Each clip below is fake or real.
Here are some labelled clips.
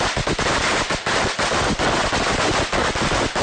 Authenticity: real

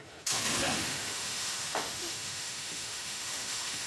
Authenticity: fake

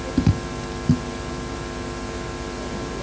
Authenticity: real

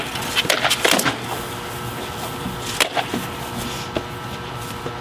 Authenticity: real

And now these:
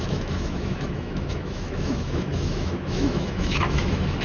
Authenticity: fake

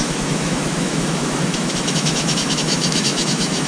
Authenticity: fake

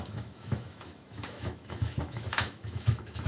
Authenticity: fake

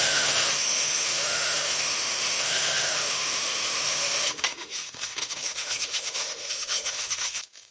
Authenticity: fake